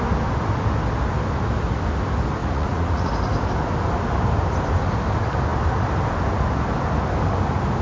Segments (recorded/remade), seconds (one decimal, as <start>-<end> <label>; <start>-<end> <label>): 0.0-2.4 recorded; 2.4-3.1 remade; 3.1-7.8 recorded